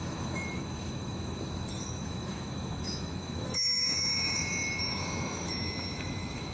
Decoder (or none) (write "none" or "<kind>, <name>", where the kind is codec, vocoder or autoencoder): autoencoder, DAC-VAE